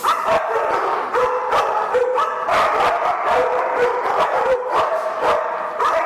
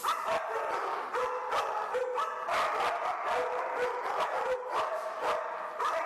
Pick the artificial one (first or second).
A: first